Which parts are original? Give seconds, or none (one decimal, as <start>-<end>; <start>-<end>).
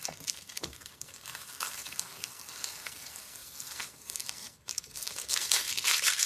none